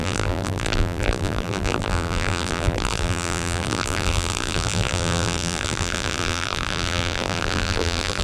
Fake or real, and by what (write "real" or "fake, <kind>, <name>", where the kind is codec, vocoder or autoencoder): fake, vocoder, BigVGAN v2